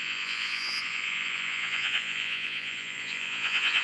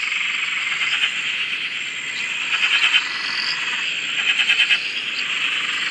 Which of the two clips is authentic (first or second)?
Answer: second